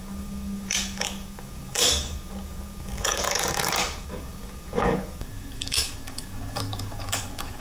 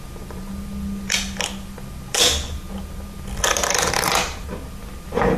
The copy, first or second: first